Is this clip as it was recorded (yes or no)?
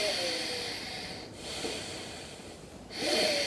yes